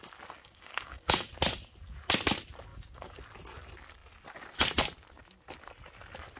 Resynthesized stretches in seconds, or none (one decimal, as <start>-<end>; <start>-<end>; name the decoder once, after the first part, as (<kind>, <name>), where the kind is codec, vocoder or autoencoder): 0.4-1.3 (codec, DAC); 2.7-3.2